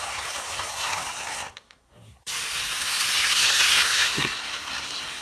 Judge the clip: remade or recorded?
remade